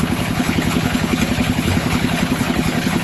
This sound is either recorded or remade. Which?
remade